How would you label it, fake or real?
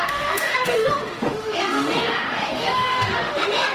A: fake